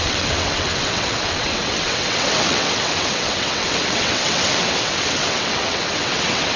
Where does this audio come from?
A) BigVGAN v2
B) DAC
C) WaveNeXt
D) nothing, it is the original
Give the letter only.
C